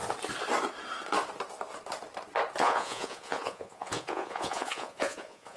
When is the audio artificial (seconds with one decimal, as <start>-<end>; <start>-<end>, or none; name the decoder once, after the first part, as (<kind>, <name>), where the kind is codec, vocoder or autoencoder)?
2.6-5.6 (vocoder, Vocos)